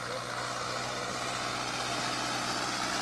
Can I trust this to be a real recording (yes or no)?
yes